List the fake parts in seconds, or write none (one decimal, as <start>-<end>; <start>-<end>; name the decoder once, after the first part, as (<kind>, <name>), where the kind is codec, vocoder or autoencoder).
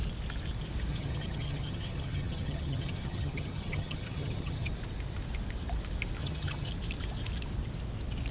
0.9-4.7 (vocoder, HiFi-GAN); 6.2-6.7